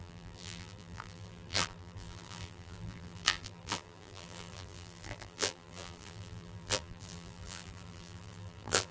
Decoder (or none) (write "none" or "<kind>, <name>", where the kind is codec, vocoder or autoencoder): vocoder, BigVGAN v2